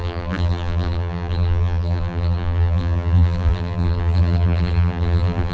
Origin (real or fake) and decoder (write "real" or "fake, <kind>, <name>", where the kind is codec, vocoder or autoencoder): fake, vocoder, BigVGAN v2